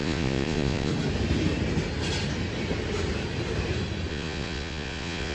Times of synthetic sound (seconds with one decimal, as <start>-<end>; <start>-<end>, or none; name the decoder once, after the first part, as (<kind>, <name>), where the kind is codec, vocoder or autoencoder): 0.0-0.9 (vocoder, Vocos); 4.1-5.3